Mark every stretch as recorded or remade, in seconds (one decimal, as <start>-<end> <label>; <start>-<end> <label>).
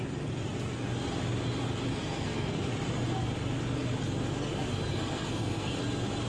0.0-1.9 recorded; 1.9-2.7 remade; 2.7-4.9 recorded; 4.9-5.8 remade; 5.8-6.3 recorded